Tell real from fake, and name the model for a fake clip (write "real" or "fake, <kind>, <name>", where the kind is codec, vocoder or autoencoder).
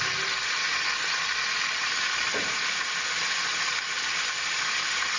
real